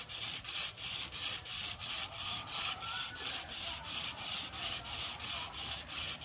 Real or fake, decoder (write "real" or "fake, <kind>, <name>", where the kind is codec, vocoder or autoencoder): real